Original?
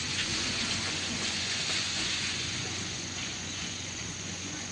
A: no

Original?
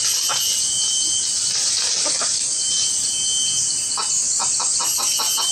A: yes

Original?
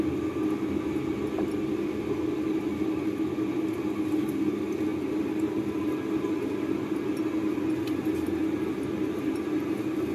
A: yes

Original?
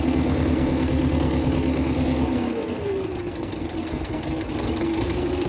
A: no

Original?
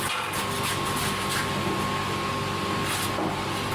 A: yes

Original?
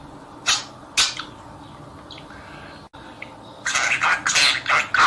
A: yes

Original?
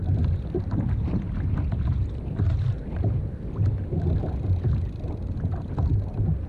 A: yes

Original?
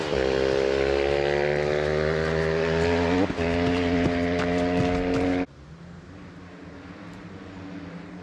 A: yes